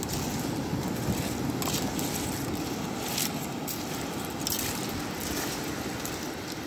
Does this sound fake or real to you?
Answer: real